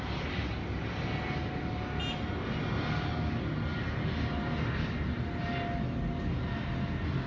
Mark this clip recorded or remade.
recorded